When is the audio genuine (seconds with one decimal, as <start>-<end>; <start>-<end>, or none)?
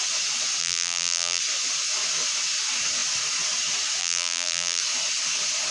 0.0-0.6; 1.4-4.0; 4.8-5.7